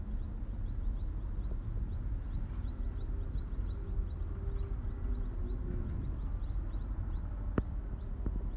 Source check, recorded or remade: recorded